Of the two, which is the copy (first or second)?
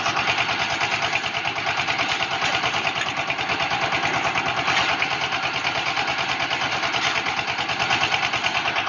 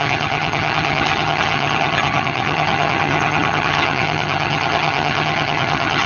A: second